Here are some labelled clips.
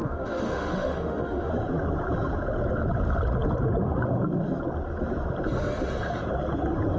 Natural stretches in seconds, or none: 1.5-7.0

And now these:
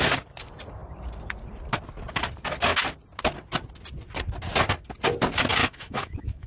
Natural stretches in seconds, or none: 0.0-5.6

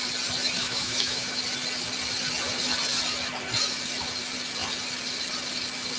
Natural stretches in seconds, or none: 0.0-0.6; 1.4-6.0